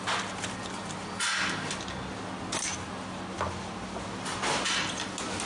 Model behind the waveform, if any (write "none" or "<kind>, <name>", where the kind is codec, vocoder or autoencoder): none